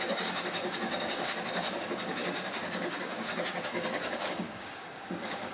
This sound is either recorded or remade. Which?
remade